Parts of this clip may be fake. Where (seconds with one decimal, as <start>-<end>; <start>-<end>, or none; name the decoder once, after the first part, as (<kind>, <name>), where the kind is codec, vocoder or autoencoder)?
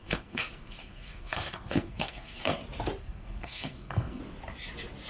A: 0.0-2.6 (codec, SNAC); 3.0-4.2